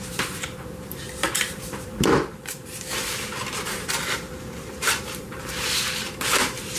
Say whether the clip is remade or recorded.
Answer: remade